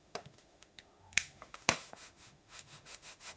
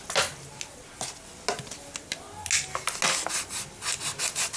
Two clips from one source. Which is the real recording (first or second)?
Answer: second